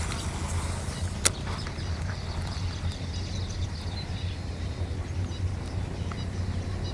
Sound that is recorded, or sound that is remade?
recorded